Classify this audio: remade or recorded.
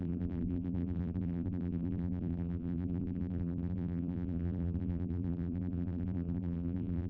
remade